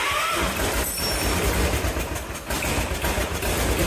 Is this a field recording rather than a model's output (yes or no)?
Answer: yes